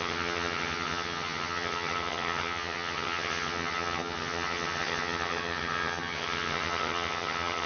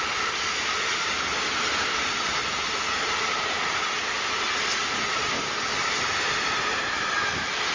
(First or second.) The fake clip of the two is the first